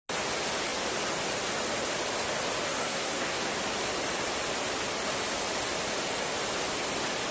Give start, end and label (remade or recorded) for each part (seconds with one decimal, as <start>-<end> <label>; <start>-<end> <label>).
0.0-2.8 recorded; 2.8-3.5 remade; 3.5-7.3 recorded